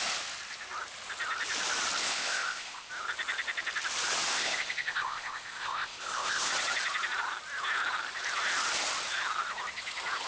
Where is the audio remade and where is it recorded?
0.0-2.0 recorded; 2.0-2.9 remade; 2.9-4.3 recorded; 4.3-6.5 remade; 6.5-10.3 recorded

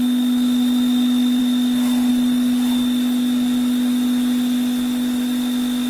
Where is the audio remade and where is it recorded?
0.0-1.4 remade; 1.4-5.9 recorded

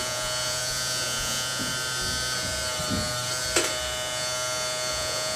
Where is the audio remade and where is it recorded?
0.0-1.7 remade; 1.7-4.9 recorded; 4.9-5.4 remade